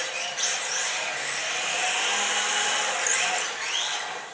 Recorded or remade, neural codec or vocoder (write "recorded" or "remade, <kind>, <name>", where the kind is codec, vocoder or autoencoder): recorded